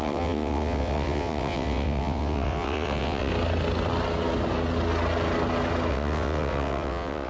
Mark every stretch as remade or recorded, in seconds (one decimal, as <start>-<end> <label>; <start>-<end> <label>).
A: 0.0-3.3 remade; 3.3-5.9 recorded; 5.9-7.3 remade